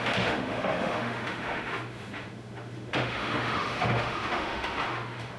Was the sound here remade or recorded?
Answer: remade